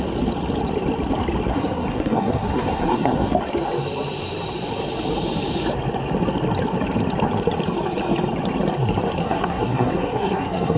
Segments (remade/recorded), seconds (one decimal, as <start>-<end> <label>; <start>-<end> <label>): 0.0-1.5 recorded; 1.5-3.3 remade; 3.3-9.2 recorded; 9.2-10.8 remade